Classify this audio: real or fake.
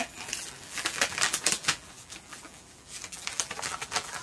fake